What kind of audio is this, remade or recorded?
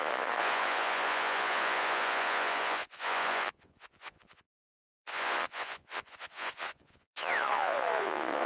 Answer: remade